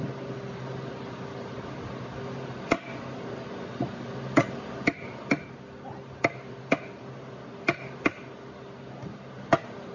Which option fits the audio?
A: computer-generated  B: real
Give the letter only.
B